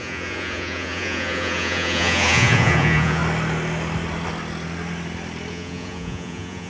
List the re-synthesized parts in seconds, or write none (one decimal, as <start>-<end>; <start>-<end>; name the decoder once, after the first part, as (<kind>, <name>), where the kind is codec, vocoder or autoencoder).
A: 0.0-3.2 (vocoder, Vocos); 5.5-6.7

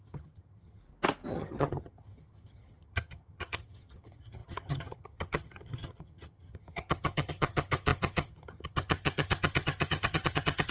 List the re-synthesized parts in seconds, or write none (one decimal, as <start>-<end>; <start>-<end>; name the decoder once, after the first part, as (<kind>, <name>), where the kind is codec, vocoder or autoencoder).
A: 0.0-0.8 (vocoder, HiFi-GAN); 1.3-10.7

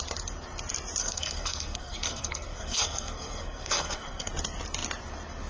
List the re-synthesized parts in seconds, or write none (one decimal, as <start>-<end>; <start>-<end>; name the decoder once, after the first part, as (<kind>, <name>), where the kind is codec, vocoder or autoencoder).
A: 1.0-4.3 (codec, SNAC)